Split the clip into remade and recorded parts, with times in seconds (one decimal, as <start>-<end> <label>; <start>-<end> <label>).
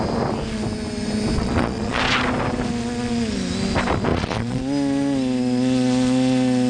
0.0-1.4 recorded; 1.4-2.0 remade; 2.0-4.1 recorded; 4.1-4.6 remade; 4.6-6.7 recorded